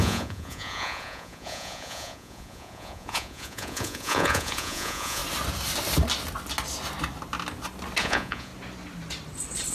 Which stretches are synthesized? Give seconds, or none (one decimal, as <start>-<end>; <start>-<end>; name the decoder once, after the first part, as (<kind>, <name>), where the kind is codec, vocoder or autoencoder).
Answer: 0.0-5.2 (vocoder, Vocos); 8.0-8.5